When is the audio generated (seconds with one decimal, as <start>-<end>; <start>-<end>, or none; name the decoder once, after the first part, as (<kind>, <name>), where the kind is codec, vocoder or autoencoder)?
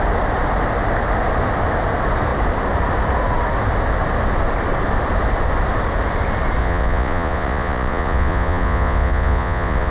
6.6-9.9 (vocoder, Vocos)